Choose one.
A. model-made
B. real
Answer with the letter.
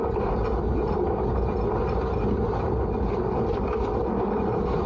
B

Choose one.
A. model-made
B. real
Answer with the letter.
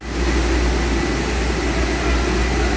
B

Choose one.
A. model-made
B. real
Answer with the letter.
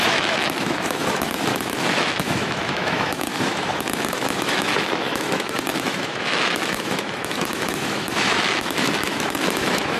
A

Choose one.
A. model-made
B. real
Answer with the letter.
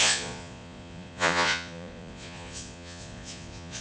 A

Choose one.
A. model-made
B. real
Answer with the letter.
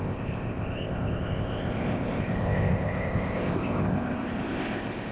A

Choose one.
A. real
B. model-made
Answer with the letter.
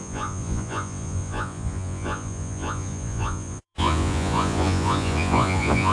B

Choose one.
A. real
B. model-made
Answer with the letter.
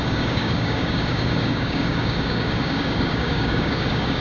B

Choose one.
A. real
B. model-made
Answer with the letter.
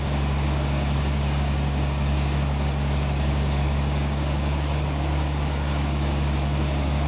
B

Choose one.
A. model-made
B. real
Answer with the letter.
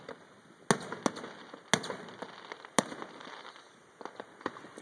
B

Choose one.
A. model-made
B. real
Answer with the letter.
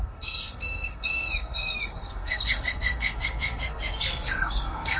A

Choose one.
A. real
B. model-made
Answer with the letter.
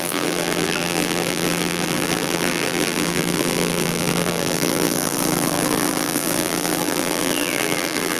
B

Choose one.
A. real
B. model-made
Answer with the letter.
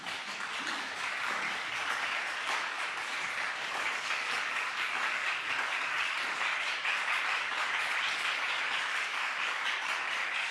B